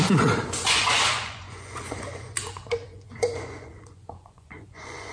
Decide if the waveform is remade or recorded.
remade